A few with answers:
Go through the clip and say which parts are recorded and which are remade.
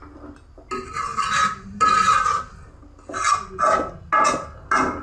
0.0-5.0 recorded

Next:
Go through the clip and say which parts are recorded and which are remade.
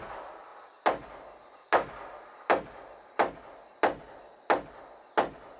0.0-5.6 recorded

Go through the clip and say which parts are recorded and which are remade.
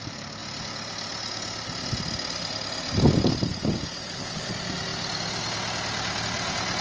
0.0-4.0 recorded; 4.0-4.5 remade; 4.5-6.8 recorded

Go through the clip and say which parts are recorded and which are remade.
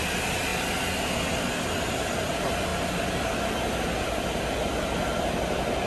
0.0-5.9 recorded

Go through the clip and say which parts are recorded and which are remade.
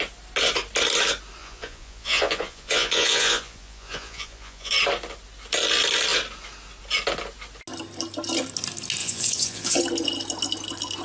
0.0-1.4 recorded; 1.4-4.7 remade; 4.7-9.0 recorded; 9.0-9.8 remade; 9.8-11.0 recorded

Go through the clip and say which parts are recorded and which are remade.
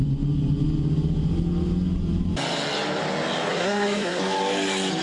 0.0-3.5 recorded; 3.5-4.2 remade; 4.2-5.0 recorded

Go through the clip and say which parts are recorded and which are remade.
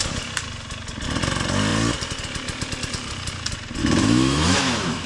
0.0-3.8 recorded; 3.8-5.1 remade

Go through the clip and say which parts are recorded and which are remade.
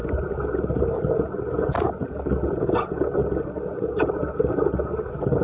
0.0-5.4 recorded